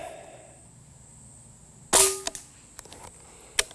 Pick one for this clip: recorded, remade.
recorded